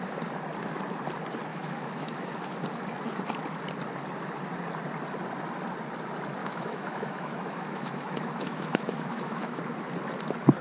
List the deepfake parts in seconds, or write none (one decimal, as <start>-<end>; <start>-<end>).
1.5-2.3; 6.4-9.6